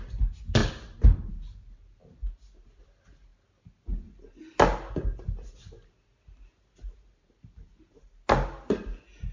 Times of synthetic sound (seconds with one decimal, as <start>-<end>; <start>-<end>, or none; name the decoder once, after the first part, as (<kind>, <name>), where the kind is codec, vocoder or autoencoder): none